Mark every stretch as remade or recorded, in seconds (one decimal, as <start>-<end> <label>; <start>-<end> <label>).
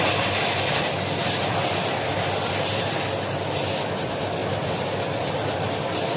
0.0-6.2 recorded